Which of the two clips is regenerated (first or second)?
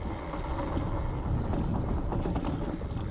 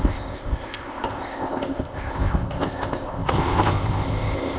second